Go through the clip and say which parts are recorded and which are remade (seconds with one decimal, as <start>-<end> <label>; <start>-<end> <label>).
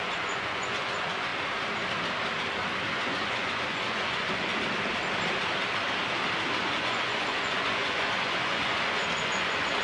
0.0-1.3 remade; 1.3-2.9 recorded; 2.9-4.5 remade; 4.5-6.6 recorded; 6.6-9.8 remade